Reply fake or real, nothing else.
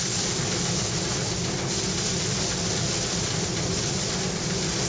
real